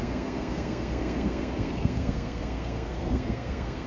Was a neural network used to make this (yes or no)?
yes